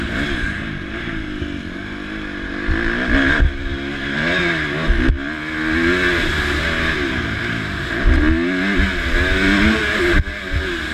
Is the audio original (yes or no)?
yes